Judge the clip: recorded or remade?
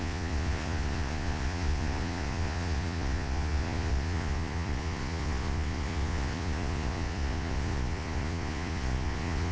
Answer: remade